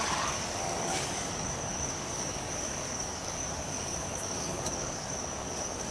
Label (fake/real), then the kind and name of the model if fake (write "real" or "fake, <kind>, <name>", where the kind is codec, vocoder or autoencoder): fake, codec, DAC